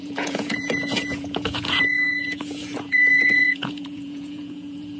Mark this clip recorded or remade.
remade